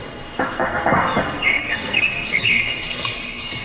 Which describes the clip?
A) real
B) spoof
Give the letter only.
B